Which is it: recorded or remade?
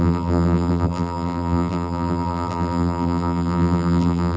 remade